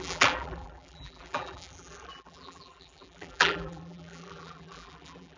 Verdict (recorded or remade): remade